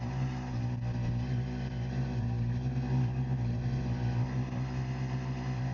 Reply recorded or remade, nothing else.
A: recorded